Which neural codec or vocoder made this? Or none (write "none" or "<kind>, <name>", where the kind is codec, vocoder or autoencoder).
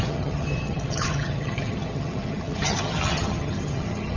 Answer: vocoder, HiFi-GAN